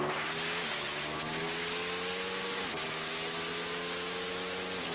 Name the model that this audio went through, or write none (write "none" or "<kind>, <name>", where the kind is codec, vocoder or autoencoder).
none